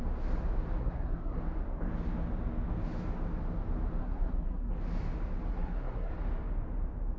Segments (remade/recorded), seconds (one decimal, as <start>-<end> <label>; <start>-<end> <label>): 0.0-0.8 recorded; 0.8-1.4 remade; 1.4-4.0 recorded; 4.0-4.7 remade; 4.7-5.5 recorded; 5.5-6.1 remade; 6.1-7.2 recorded